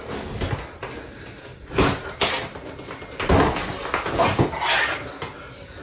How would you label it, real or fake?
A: real